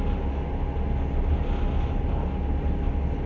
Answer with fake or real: real